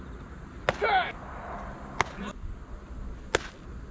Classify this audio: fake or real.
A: real